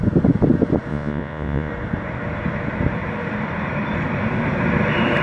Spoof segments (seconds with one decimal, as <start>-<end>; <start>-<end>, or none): 0.9-1.7